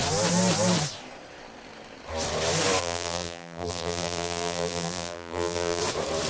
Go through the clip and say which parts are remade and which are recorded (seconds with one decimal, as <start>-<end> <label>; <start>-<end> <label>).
0.0-2.8 recorded; 2.8-5.8 remade; 5.8-6.3 recorded